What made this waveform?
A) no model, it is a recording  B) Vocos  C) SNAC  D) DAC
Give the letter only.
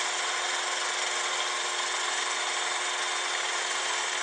A